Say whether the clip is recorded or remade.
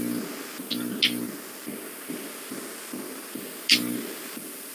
recorded